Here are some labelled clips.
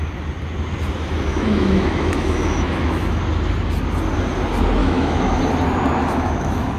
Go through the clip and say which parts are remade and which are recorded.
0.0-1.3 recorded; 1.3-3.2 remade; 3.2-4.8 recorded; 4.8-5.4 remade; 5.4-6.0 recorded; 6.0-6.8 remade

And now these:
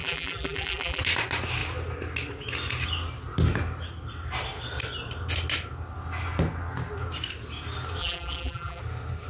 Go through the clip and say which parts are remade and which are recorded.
0.0-1.0 remade; 1.0-8.0 recorded; 8.0-8.8 remade; 8.8-9.3 recorded

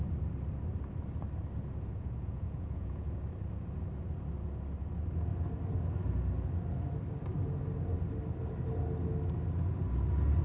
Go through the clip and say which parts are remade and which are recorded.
0.0-1.9 recorded; 1.9-3.1 remade; 3.1-10.4 recorded

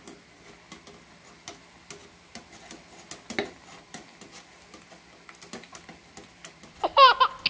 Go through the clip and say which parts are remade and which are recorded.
0.0-7.5 recorded

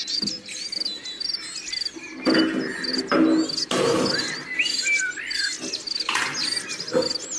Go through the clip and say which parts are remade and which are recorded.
0.0-7.4 recorded

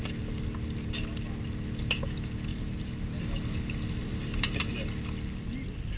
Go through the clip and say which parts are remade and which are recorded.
0.0-2.5 recorded; 2.5-3.2 remade; 3.2-4.0 recorded; 4.0-4.6 remade; 4.6-6.0 recorded

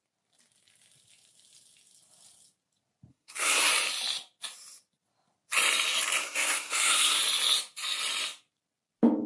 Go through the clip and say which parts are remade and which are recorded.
0.0-3.1 recorded; 3.1-3.7 remade; 3.7-6.2 recorded; 6.2-7.2 remade; 7.2-9.3 recorded